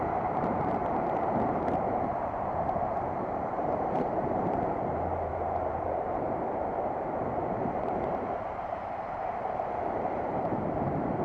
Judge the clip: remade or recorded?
remade